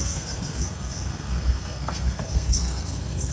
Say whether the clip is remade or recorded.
remade